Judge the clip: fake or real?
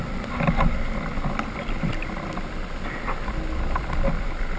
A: real